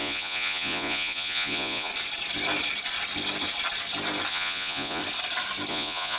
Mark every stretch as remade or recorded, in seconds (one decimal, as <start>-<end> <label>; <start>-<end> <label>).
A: 0.0-1.9 remade; 1.9-4.3 recorded; 4.3-5.0 remade; 5.0-5.7 recorded; 5.7-6.2 remade